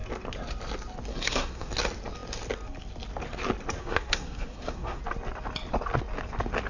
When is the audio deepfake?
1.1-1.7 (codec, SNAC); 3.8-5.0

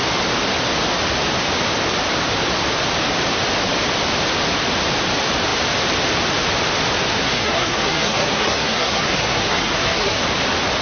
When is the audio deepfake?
7.2-10.2 (codec, SNAC)

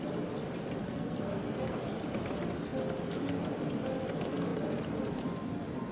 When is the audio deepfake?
0.8-1.8 (codec, SNAC)

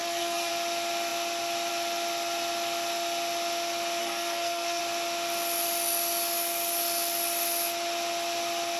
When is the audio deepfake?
0.0-0.5 (codec, SNAC); 4.0-4.8